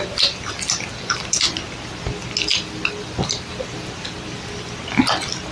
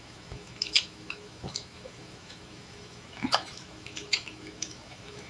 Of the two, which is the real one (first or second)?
first